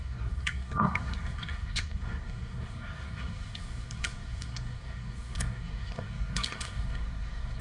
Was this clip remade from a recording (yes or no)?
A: yes